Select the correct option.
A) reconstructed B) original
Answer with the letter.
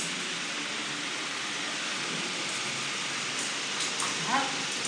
B